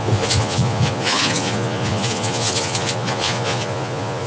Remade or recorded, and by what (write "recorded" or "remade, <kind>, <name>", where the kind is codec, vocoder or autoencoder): remade, vocoder, Vocos